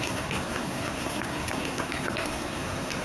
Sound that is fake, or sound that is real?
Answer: fake